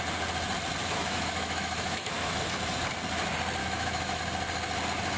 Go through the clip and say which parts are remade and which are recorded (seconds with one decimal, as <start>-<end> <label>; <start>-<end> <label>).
0.0-0.8 recorded; 0.8-2.4 remade; 2.4-3.6 recorded; 3.6-4.2 remade; 4.2-5.2 recorded